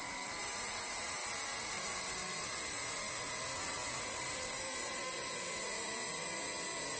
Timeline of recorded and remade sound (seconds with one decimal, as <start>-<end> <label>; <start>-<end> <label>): 0.0-7.0 recorded